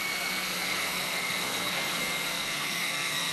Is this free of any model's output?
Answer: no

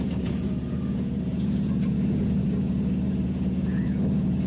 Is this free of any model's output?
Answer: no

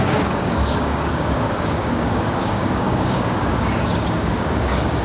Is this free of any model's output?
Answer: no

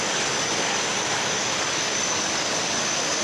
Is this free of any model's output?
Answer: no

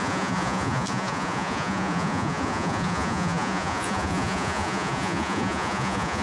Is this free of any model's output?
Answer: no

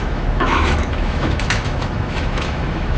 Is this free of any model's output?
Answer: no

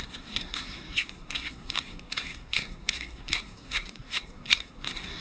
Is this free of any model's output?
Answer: no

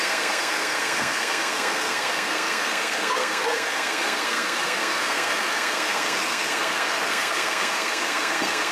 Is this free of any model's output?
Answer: no